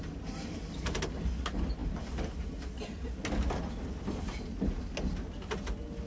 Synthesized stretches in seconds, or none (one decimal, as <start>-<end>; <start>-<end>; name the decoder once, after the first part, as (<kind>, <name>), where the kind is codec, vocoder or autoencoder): none